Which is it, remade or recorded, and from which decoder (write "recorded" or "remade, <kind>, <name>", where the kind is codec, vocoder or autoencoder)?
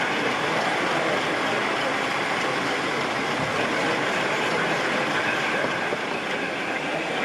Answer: recorded